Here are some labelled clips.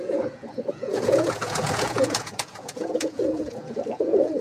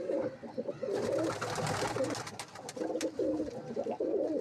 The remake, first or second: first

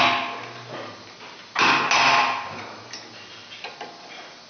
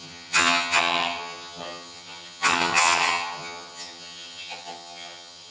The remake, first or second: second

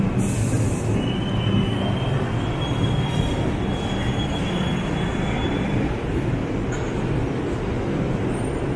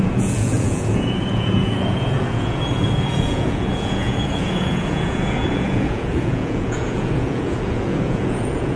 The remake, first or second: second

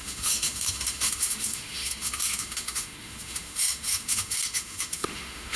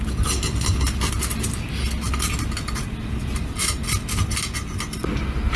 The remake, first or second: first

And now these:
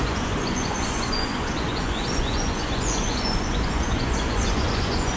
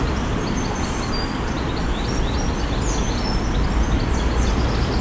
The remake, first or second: first